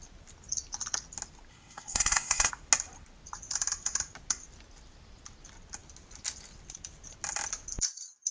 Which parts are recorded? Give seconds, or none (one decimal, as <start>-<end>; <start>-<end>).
0.0-1.5; 2.5-8.3